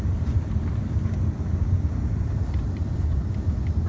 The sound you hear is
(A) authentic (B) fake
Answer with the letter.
B